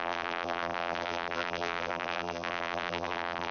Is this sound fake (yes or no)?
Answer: yes